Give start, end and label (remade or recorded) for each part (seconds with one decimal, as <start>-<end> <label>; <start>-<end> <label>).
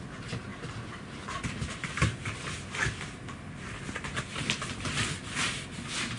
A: 0.0-0.5 recorded; 0.5-4.2 remade; 4.2-6.2 recorded